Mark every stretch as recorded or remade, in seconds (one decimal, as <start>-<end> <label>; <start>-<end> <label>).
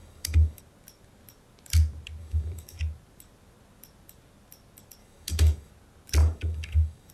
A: 0.0-0.6 remade; 0.6-2.2 recorded; 2.2-2.8 remade; 2.8-5.0 recorded; 5.0-5.7 remade; 5.7-6.2 recorded; 6.2-7.1 remade